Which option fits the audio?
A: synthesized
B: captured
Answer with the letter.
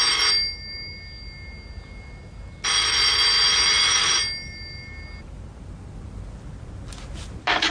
B